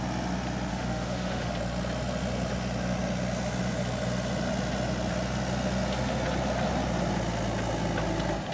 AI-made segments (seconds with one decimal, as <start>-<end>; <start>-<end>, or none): 0.7-1.5